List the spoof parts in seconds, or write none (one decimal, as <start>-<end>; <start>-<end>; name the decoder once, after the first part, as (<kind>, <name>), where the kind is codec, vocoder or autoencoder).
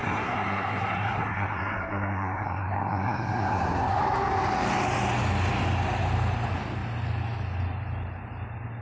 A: 0.0-4.0 (codec, SNAC)